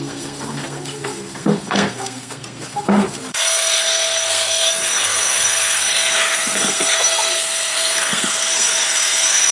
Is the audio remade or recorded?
remade